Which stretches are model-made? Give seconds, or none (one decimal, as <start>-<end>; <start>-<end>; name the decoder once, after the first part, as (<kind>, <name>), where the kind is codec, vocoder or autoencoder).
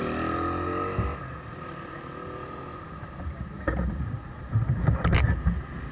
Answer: 0.0-5.1 (vocoder, BigVGAN v2)